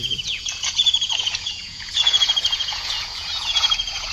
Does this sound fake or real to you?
fake